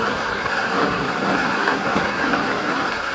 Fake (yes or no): yes